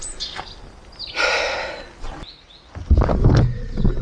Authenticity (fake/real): real